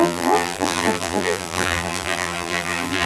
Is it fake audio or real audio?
fake